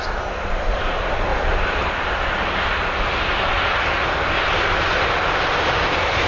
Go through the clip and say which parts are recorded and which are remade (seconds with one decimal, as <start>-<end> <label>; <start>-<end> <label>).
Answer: 0.0-1.3 recorded; 1.3-1.9 remade; 1.9-6.3 recorded